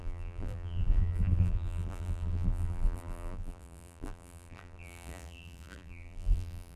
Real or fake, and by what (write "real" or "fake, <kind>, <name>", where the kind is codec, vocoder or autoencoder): fake, vocoder, BigVGAN v2